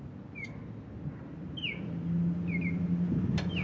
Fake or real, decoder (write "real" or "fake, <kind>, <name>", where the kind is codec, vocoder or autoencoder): real